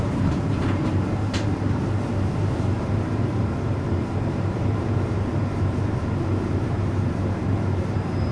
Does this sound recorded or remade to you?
remade